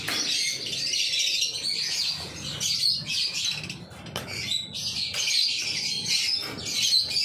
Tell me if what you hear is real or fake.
real